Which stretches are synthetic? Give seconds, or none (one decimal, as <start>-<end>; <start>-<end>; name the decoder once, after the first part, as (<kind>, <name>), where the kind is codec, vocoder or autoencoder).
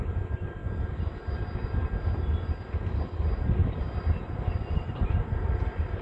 0.0-0.6 (vocoder, BigVGAN v2); 4.2-6.0